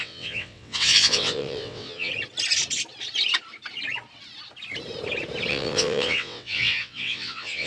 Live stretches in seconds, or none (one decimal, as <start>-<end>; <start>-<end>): 2.1-5.5